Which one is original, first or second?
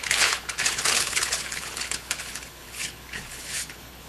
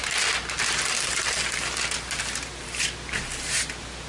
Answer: second